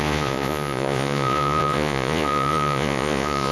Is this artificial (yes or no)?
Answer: yes